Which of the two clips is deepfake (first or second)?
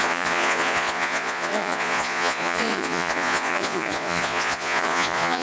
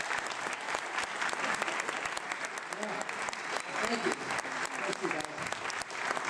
first